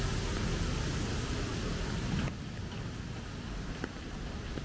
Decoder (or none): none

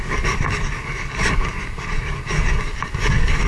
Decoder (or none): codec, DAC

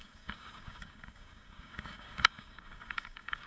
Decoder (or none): codec, DAC